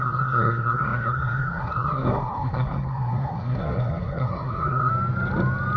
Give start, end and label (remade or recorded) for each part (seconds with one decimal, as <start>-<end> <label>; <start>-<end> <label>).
0.0-4.9 remade; 4.9-5.8 recorded